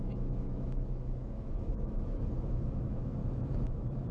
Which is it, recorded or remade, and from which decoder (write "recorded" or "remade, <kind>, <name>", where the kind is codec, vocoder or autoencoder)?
remade, autoencoder, DAC-VAE